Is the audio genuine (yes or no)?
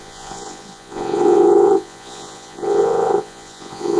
no